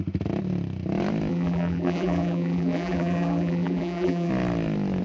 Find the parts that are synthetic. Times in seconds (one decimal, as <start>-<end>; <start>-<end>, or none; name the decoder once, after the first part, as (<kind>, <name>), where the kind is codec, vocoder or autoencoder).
1.3-4.3 (vocoder, BigVGAN v2)